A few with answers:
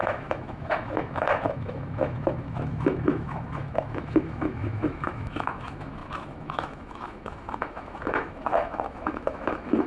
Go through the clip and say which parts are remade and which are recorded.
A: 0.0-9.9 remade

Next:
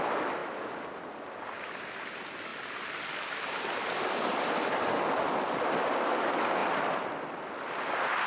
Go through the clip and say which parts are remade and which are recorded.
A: 0.0-8.3 recorded

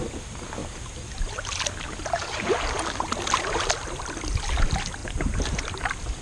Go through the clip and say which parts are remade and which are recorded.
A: 0.0-5.0 recorded; 5.0-5.6 remade; 5.6-6.2 recorded

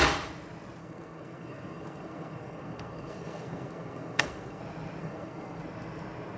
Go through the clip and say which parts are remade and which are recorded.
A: 0.0-0.8 recorded; 0.8-4.6 remade; 4.6-5.0 recorded; 5.0-5.6 remade; 5.6-6.4 recorded

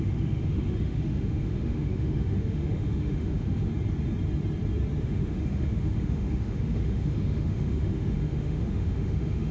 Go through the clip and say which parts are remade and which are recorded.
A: 0.0-3.7 remade; 3.7-5.0 recorded; 5.0-9.5 remade

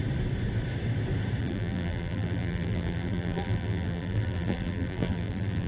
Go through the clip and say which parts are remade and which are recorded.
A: 0.0-1.4 recorded; 1.4-5.7 remade

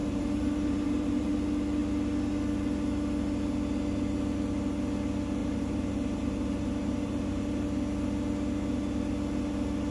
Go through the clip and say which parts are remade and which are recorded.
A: 0.0-1.3 remade; 1.3-5.4 recorded; 5.4-7.4 remade; 7.4-9.9 recorded